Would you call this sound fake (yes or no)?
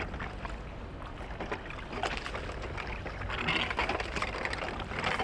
no